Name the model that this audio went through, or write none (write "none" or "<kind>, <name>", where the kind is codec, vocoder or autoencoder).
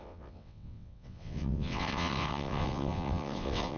vocoder, WaveNeXt